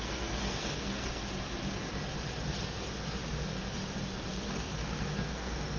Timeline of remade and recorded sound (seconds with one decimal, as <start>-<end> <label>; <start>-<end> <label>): 0.0-1.2 remade; 1.2-4.3 recorded; 4.3-5.8 remade